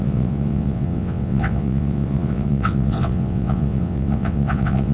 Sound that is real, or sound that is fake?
fake